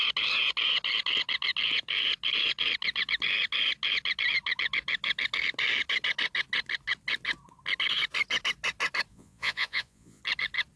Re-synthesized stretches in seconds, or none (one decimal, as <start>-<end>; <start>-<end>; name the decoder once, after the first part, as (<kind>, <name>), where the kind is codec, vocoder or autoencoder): 9.1-10.2 (vocoder, Vocos)